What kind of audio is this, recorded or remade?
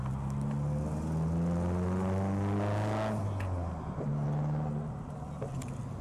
recorded